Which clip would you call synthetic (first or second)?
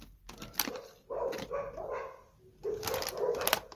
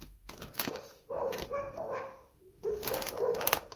second